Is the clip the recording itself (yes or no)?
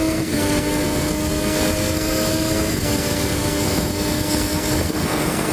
no